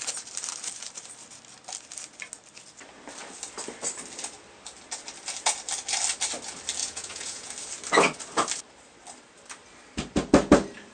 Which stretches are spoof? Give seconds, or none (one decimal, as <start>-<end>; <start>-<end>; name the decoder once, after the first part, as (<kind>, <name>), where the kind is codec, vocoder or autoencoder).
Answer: 6.8-7.5 (vocoder, Vocos)